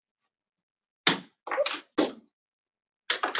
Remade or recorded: recorded